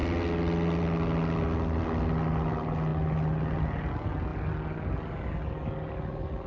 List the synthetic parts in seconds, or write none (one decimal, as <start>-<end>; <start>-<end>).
none